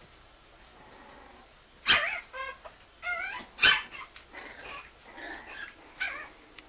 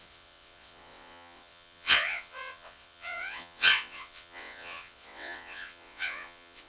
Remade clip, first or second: second